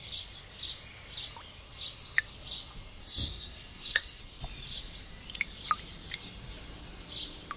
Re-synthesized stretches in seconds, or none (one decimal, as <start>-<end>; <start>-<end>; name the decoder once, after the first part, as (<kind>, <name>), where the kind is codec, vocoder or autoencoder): 3.0-4.2 (codec, SNAC)